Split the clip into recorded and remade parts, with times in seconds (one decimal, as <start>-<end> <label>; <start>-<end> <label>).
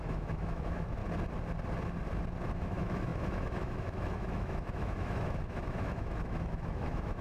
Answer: 0.0-1.0 remade; 1.0-2.5 recorded; 2.5-7.2 remade